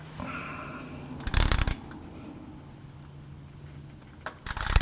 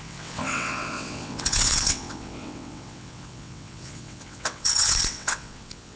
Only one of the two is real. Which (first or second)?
first